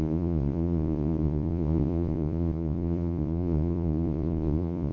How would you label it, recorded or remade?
remade